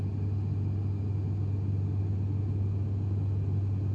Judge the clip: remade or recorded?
recorded